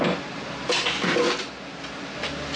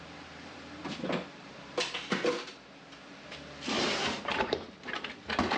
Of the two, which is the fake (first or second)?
second